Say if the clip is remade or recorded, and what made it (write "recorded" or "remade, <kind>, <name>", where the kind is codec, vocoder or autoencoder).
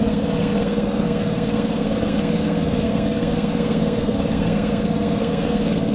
remade, codec, SNAC